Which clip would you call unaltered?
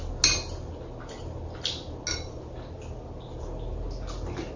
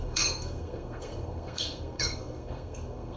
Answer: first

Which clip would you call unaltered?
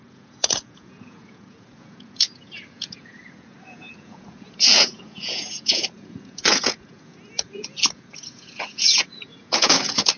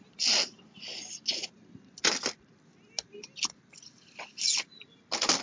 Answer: second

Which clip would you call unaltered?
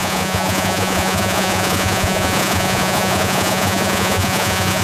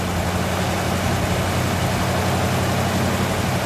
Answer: second